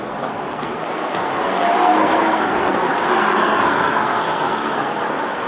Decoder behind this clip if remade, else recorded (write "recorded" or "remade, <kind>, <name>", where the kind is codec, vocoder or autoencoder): remade, codec, SNAC